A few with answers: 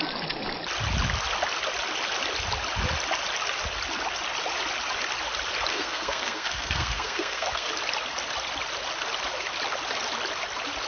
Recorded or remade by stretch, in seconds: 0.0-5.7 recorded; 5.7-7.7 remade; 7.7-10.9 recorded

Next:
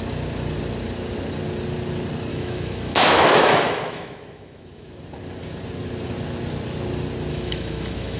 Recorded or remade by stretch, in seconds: 0.0-2.3 recorded; 2.3-4.9 remade; 4.9-7.3 recorded; 7.3-8.2 remade

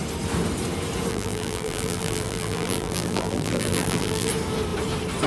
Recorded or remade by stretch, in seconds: 0.0-1.1 recorded; 1.1-4.3 remade; 4.3-5.3 recorded